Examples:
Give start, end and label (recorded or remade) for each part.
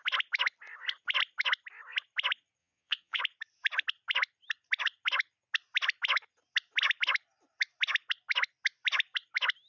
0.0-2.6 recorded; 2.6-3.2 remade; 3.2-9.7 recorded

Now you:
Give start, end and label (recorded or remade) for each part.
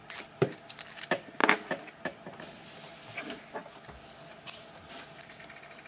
0.0-5.9 recorded